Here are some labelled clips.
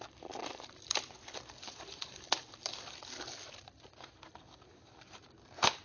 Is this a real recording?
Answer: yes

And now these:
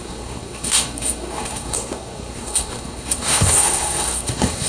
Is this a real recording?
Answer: no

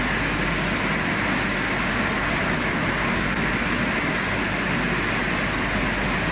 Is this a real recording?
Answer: yes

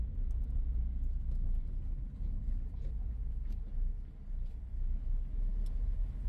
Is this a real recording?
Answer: yes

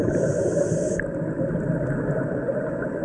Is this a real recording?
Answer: yes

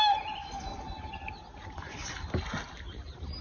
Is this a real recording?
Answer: yes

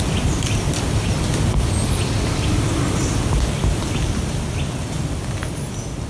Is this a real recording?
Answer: yes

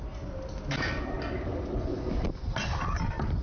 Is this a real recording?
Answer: yes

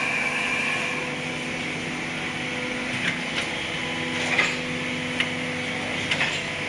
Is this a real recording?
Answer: yes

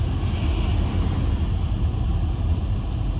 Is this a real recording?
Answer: yes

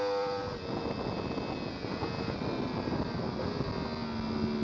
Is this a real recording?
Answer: yes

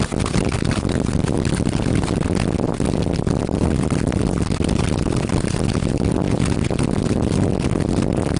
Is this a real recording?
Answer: yes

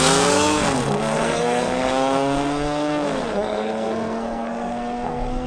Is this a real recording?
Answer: no